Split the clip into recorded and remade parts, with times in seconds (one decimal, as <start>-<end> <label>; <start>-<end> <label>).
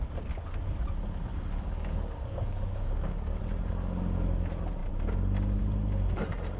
0.0-1.3 recorded; 1.3-3.4 remade; 3.4-6.6 recorded